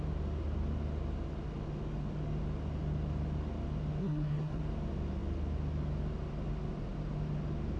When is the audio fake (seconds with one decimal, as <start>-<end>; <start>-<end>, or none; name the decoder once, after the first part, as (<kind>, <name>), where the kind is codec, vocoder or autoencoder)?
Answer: 4.0-4.6 (codec, SNAC)